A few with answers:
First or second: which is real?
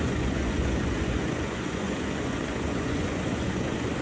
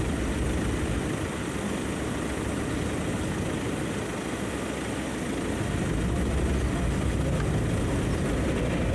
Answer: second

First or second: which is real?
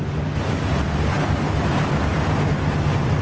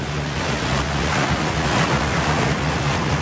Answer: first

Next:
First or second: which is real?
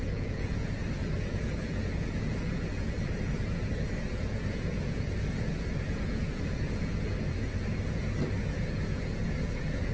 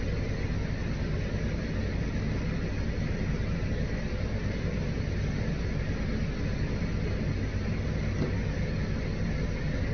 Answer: second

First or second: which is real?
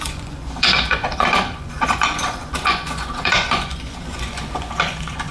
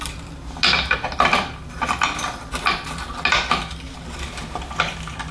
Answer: second